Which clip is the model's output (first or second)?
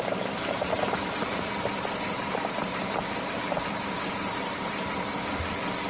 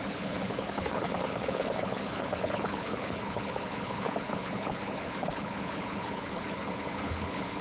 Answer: second